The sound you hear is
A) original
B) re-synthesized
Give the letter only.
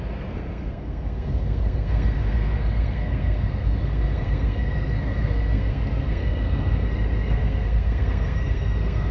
B